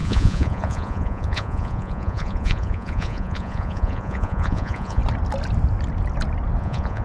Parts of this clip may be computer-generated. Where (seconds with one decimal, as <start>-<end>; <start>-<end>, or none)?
0.0-5.0; 6.6-7.0